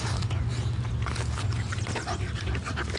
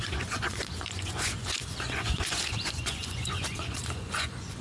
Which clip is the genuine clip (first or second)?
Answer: first